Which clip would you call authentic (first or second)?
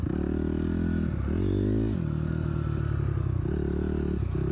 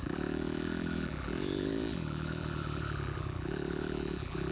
first